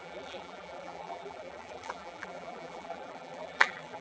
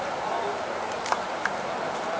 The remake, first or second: first